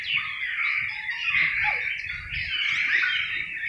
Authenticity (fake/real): real